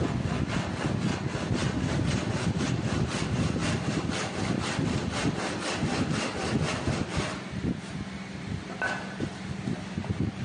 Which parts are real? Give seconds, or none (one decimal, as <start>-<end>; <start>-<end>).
0.0-10.4